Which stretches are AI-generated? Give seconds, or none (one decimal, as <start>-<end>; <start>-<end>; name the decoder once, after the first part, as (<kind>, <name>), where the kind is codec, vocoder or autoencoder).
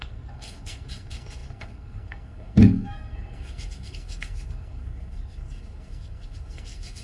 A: 0.0-7.0 (codec, SNAC)